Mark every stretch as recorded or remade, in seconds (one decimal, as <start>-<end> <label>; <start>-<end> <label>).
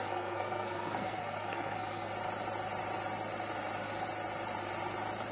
0.0-2.1 remade; 2.1-5.3 recorded